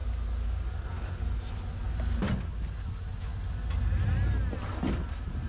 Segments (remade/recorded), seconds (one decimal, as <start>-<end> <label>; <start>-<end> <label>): 0.0-5.5 recorded